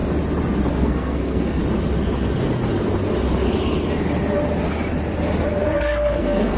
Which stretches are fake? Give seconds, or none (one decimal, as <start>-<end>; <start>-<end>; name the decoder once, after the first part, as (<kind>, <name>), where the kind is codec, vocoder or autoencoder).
0.7-1.6 (codec, SNAC); 5.6-6.6